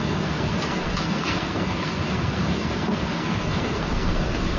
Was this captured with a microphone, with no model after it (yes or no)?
no